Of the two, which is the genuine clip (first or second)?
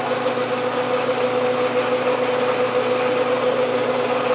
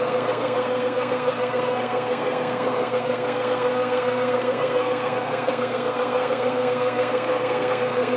first